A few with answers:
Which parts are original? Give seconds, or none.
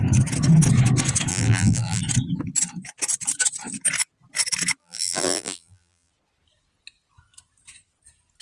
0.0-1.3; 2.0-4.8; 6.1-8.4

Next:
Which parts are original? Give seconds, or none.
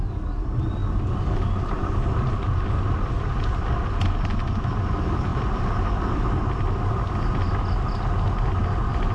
0.0-9.1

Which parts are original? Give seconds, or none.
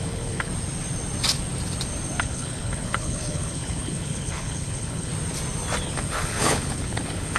0.5-2.2; 5.1-5.8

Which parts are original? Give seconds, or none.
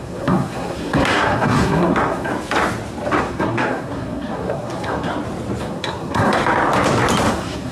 2.3-3.2; 5.1-5.6; 6.4-7.3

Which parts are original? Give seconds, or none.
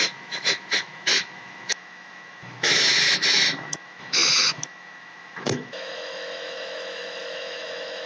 none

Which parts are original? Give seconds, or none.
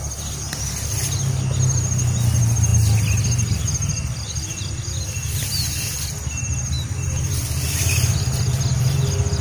0.0-9.4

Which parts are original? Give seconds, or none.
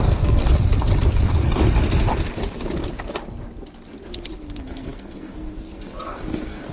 0.4-4.4